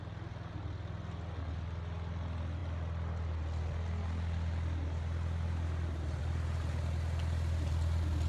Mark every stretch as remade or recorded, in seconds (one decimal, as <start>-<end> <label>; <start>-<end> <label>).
0.0-8.3 recorded